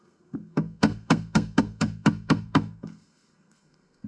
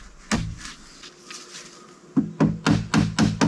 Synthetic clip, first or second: first